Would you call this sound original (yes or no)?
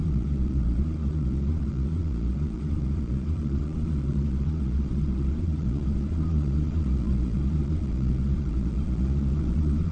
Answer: no